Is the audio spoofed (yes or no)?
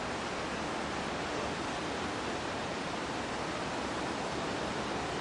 no